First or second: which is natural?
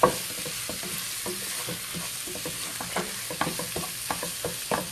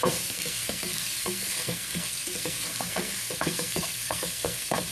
first